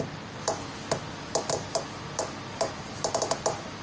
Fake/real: real